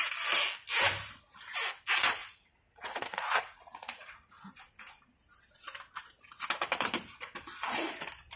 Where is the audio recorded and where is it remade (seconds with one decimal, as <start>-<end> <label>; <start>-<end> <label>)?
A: 0.0-2.2 recorded; 2.2-4.5 remade; 4.5-8.4 recorded